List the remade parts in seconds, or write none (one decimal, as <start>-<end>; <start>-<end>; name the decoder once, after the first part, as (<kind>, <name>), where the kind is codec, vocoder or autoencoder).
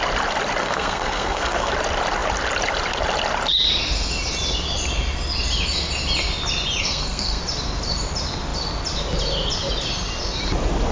0.6-1.7 (codec, SNAC); 6.8-7.4